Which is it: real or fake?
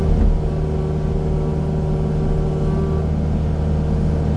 real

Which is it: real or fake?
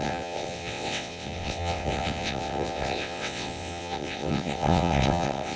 fake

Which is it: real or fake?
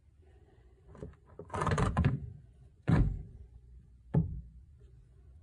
fake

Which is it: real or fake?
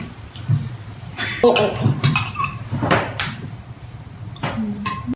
fake